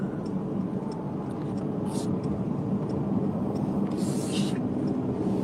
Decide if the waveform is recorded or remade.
recorded